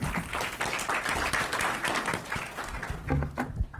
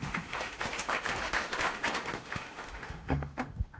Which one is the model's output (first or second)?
second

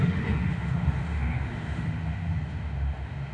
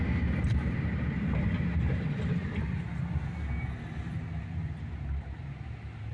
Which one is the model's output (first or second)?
first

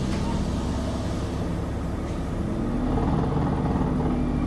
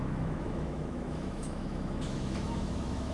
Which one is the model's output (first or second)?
second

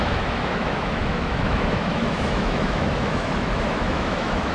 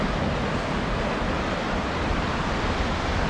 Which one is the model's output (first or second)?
first